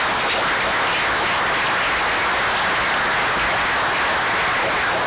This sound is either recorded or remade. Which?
recorded